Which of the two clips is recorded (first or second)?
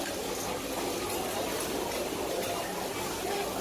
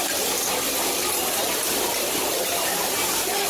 first